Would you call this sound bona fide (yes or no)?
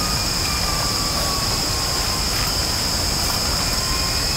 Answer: yes